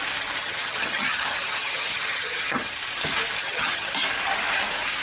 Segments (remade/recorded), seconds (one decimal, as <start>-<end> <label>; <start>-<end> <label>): 0.0-0.4 recorded; 0.4-2.7 remade; 2.7-3.4 recorded; 3.4-3.9 remade; 3.9-5.0 recorded